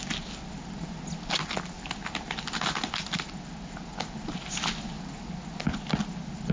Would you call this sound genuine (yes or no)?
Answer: yes